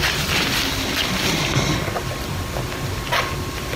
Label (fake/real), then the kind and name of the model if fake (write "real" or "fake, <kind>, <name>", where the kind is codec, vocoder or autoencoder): real